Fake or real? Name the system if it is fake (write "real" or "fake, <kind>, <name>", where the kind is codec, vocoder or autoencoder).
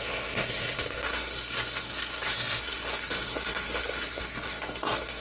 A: fake, codec, SNAC